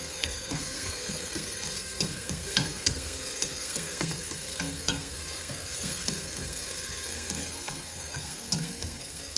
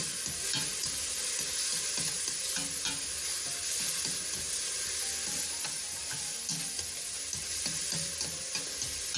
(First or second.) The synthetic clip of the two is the first